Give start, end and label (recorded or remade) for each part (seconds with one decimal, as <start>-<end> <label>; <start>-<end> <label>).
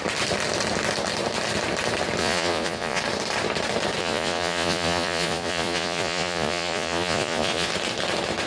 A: 0.0-2.2 recorded; 2.2-3.0 remade; 3.0-4.0 recorded; 4.0-7.7 remade; 7.7-8.5 recorded